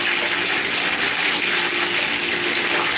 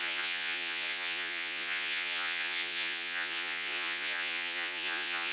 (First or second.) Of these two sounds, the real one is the first